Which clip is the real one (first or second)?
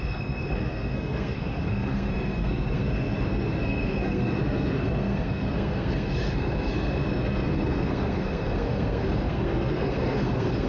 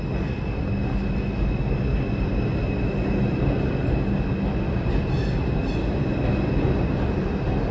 second